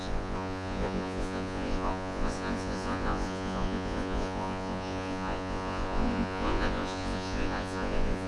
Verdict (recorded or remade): remade